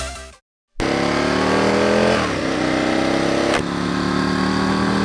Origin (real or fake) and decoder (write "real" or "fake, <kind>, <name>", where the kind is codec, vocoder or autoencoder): real